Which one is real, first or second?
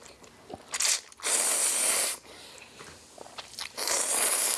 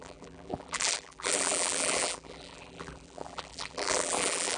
first